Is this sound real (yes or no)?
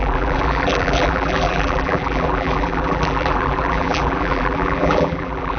no